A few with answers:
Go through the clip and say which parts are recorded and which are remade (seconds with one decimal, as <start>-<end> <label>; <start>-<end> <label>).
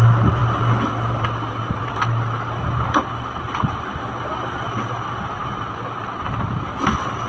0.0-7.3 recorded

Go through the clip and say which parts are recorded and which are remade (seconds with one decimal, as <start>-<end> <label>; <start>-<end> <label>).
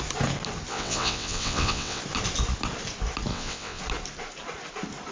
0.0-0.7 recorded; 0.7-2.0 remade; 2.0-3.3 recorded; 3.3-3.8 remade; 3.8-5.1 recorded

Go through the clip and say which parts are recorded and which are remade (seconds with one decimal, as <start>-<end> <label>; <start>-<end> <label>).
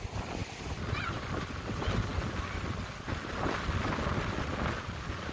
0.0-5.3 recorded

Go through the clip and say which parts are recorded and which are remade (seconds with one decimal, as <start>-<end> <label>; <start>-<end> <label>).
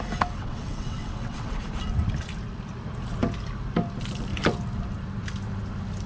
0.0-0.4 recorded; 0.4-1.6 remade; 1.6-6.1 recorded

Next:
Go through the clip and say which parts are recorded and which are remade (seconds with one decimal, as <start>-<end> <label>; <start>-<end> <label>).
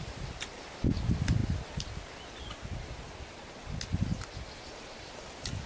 0.0-5.7 recorded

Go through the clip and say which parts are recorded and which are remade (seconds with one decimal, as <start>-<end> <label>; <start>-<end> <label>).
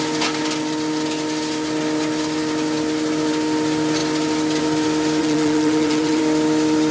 0.0-5.2 recorded; 5.2-6.2 remade; 6.2-6.9 recorded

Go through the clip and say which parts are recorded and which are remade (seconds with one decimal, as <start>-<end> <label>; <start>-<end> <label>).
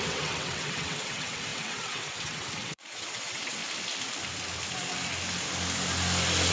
0.0-3.6 remade; 3.6-6.5 recorded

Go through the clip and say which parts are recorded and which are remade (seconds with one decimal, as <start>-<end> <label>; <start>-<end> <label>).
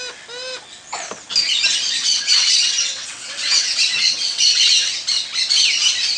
0.0-2.0 recorded; 2.0-4.9 remade; 4.9-6.2 recorded